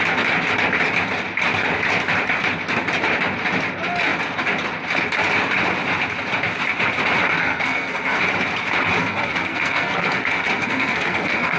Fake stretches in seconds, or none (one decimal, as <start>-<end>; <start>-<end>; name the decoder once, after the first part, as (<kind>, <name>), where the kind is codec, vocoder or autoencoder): 7.4-8.2 (codec, SNAC); 9.0-11.6

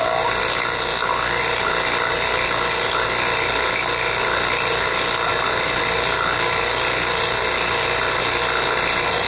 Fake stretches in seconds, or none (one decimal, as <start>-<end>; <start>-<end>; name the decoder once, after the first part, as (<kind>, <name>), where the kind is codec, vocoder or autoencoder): none